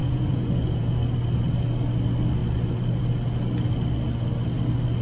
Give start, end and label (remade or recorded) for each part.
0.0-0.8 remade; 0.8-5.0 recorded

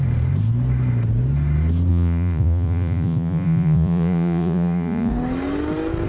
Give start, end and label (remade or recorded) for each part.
0.0-1.9 recorded; 1.9-5.1 remade; 5.1-6.1 recorded

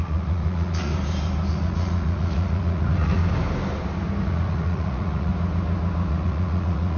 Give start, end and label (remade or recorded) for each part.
0.0-0.9 remade; 0.9-1.5 recorded; 1.5-3.2 remade; 3.2-4.2 recorded; 4.2-5.3 remade; 5.3-6.1 recorded; 6.1-7.0 remade

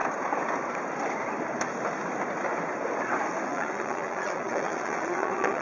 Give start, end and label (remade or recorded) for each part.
0.0-3.5 recorded; 3.5-5.6 remade

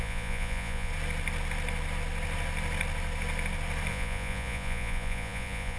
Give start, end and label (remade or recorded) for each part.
0.0-0.9 remade; 0.9-3.9 recorded; 3.9-5.8 remade

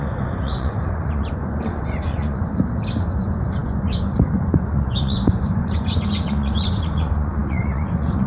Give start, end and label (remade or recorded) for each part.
0.0-2.5 remade; 2.5-3.0 recorded; 3.0-8.3 remade

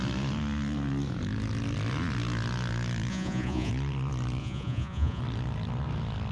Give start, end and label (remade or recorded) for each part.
0.0-3.1 recorded; 3.1-3.7 remade; 3.7-4.4 recorded; 4.4-5.2 remade; 5.2-6.3 recorded